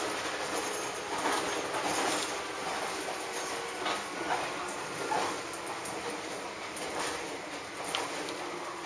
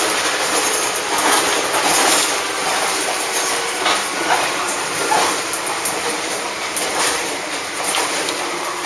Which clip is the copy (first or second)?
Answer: second